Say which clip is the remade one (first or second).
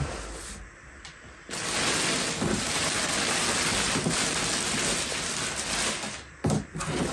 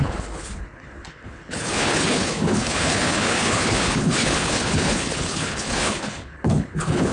second